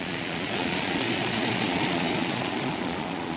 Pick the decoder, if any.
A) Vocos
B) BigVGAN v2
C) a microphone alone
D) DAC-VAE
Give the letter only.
A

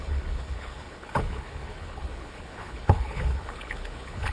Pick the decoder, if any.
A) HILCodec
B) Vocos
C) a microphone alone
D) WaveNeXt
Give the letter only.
A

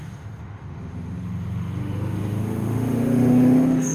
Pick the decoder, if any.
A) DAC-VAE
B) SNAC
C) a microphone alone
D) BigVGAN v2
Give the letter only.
A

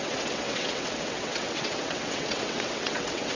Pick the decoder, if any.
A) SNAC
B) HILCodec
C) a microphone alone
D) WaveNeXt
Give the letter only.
D